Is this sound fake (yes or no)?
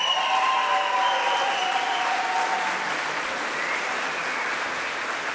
no